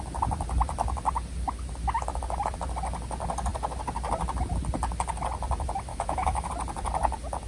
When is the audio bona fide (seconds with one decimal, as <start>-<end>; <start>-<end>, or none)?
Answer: 0.0-5.9; 6.5-7.5